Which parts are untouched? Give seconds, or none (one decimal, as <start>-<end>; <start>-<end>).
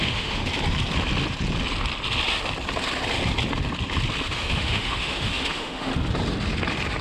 0.5-4.3; 5.9-7.0